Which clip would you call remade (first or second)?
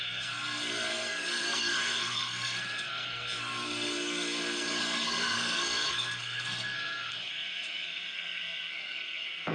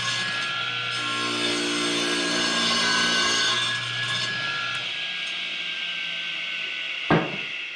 first